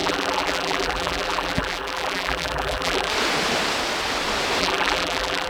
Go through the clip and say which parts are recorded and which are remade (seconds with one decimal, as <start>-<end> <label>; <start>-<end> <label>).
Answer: 0.0-3.1 remade; 3.1-4.6 recorded; 4.6-5.5 remade